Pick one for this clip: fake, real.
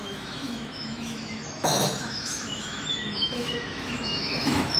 fake